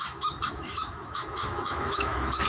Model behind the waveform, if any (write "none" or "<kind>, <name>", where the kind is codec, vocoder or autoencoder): autoencoder, DAC-VAE